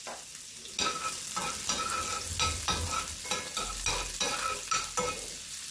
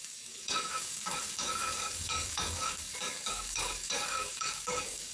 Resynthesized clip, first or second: second